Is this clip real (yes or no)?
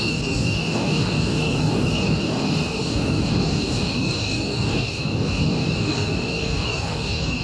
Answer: no